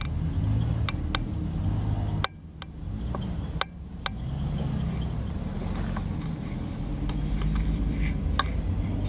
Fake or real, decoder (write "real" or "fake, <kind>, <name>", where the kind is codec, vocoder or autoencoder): real